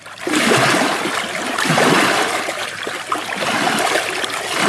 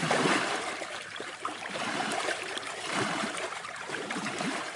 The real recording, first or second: first